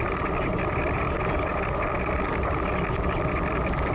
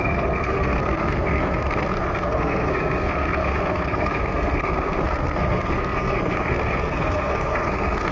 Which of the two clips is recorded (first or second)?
first